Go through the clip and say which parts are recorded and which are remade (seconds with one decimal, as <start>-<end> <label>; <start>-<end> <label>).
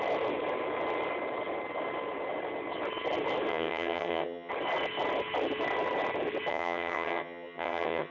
0.0-3.5 recorded; 3.5-4.5 remade; 4.5-6.5 recorded; 6.5-8.1 remade